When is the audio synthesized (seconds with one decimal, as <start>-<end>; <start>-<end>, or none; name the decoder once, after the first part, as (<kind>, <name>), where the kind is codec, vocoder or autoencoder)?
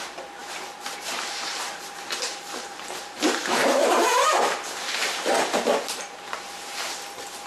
0.0-7.5 (vocoder, BigVGAN v2)